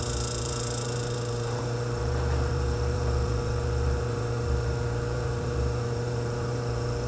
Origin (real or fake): fake